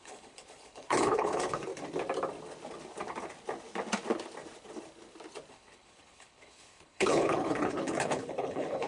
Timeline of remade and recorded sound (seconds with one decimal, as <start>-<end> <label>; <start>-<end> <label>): 0.0-1.7 remade; 1.7-5.5 recorded; 5.5-8.9 remade